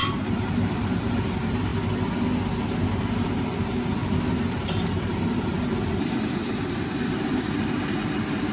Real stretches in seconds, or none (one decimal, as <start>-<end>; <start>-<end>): 1.7-3.1